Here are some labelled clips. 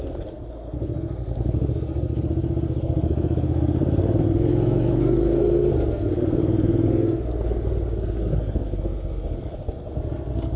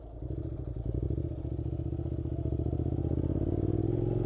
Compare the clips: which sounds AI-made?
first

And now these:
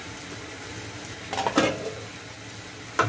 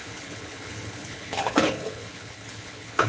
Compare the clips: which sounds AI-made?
second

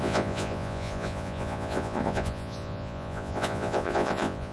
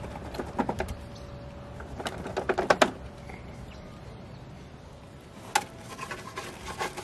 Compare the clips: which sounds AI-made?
first